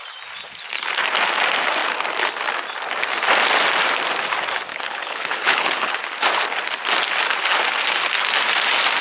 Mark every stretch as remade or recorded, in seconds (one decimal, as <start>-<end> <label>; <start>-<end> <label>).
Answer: 0.0-4.7 recorded; 4.7-6.0 remade; 6.0-9.0 recorded